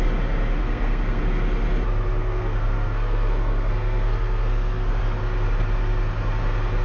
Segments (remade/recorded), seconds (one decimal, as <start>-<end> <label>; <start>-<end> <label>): 0.0-0.6 recorded; 0.6-1.2 remade; 1.2-2.2 recorded; 2.2-5.0 remade; 5.0-6.8 recorded